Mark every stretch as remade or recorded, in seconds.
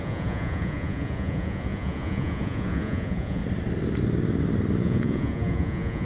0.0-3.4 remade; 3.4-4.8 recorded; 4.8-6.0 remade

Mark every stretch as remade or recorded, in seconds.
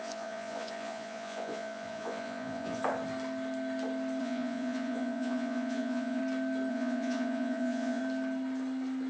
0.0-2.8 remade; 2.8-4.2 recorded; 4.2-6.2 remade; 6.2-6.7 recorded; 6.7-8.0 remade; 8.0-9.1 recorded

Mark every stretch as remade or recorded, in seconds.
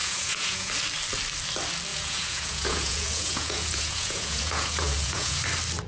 0.0-0.7 remade; 0.7-1.9 recorded; 1.9-5.4 remade; 5.4-5.9 recorded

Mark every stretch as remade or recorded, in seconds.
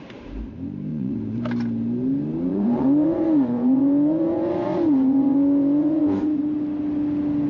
0.0-0.9 recorded; 0.9-1.4 remade; 1.4-2.5 recorded; 2.5-6.0 remade; 6.0-7.5 recorded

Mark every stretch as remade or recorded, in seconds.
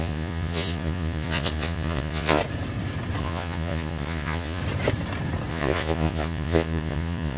0.0-2.4 remade; 2.4-3.2 recorded; 3.2-4.6 remade; 4.6-5.5 recorded; 5.5-7.4 remade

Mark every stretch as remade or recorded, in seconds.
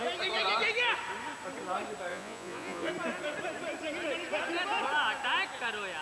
0.0-2.1 recorded; 2.1-2.9 remade; 2.9-6.0 recorded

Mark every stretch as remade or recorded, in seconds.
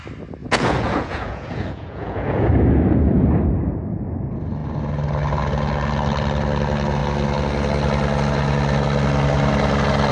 0.0-0.4 recorded; 0.4-2.5 remade; 2.5-10.1 recorded